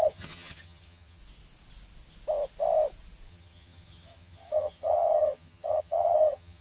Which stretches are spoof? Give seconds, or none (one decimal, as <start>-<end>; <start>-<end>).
0.0-1.2; 3.3-6.6